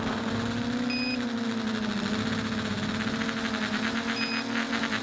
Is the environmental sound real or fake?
real